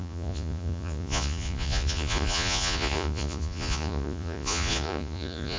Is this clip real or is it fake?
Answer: fake